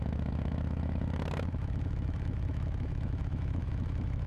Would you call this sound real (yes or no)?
no